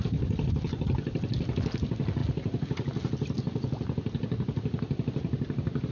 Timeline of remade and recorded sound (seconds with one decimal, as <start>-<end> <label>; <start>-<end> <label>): 0.0-5.9 recorded